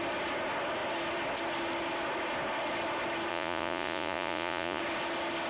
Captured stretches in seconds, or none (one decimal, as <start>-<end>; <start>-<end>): 0.0-3.3; 4.8-5.5